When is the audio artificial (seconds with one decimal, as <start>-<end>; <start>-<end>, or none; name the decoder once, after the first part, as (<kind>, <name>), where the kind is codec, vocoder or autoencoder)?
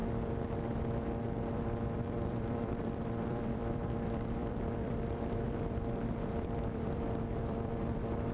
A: 1.5-8.3 (vocoder, BigVGAN v2)